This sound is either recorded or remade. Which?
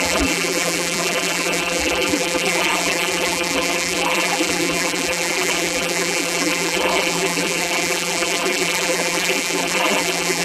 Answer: remade